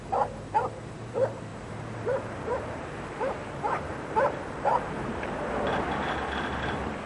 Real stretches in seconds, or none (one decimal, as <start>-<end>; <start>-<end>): 0.0-1.5; 5.8-7.1